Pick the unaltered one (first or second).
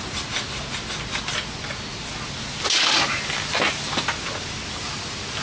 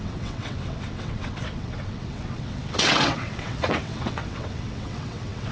first